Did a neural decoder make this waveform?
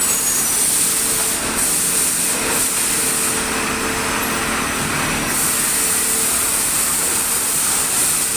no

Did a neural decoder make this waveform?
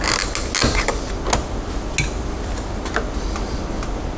no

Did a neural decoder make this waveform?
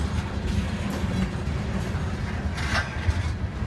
no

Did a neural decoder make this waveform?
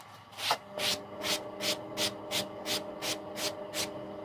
no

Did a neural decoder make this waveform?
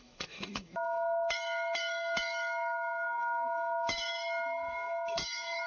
yes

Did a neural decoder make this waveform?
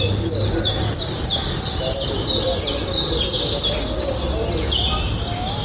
no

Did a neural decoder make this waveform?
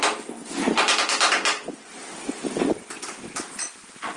no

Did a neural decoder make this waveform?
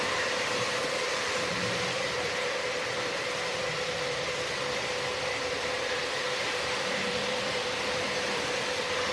yes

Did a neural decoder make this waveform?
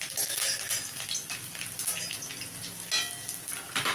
no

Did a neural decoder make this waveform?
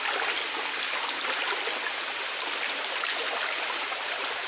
no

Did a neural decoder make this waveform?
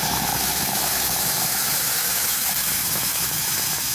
yes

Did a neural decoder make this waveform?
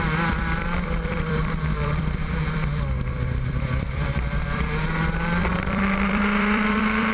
yes